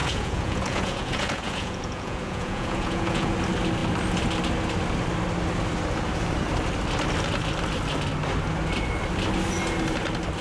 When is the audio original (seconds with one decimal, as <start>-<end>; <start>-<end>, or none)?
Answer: 3.3-10.4